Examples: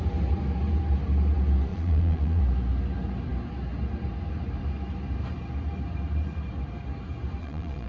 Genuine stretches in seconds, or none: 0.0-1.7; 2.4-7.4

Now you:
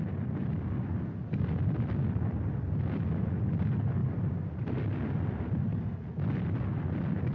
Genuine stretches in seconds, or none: 0.0-4.0; 4.8-7.3

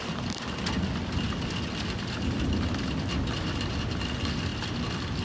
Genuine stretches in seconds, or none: 0.0-5.2

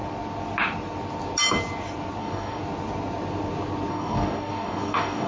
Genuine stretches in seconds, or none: 0.0-2.2; 2.6-3.9